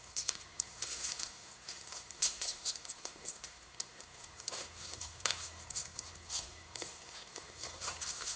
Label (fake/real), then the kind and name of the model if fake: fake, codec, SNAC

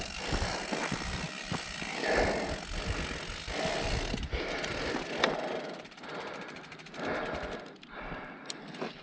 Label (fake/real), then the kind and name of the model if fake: real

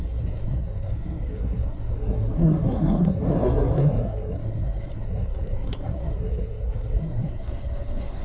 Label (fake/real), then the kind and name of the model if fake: fake, codec, SNAC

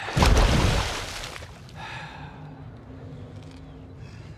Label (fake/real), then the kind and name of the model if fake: real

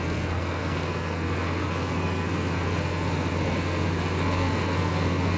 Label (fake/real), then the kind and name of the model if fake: fake, codec, SNAC